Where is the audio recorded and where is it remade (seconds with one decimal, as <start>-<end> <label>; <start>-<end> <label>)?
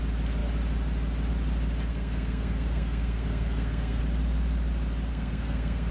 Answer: 0.0-1.9 recorded; 1.9-4.0 remade; 4.0-5.1 recorded; 5.1-5.9 remade